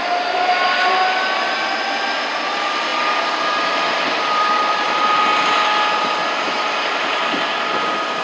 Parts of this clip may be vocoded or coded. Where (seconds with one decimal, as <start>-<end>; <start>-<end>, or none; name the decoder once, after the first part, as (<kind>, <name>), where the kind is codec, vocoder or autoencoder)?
2.9-4.8 (vocoder, BigVGAN v2)